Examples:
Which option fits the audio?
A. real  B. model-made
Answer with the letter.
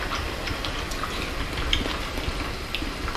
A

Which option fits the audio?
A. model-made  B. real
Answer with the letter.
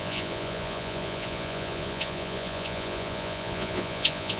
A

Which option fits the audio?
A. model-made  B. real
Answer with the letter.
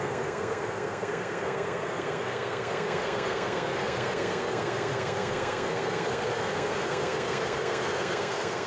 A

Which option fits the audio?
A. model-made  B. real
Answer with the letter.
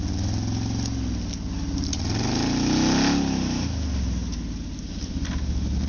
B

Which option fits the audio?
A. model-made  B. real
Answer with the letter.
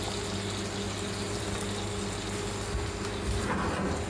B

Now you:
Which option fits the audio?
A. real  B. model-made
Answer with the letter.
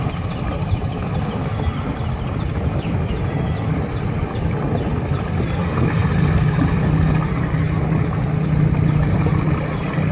A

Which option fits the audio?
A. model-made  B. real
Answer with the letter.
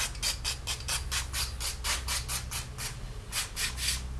B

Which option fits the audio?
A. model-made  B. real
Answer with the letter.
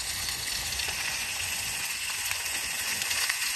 A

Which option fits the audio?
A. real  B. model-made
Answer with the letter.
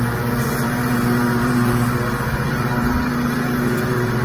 B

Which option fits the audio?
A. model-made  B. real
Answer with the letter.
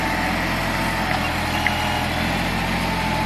B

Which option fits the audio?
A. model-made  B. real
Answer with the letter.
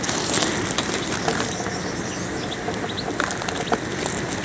B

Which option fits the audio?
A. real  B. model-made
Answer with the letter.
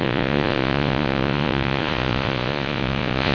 B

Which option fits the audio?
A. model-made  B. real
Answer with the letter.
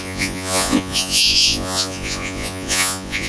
A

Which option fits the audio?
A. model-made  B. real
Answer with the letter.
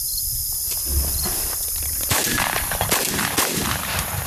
B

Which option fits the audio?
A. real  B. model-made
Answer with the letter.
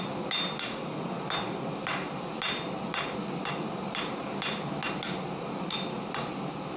A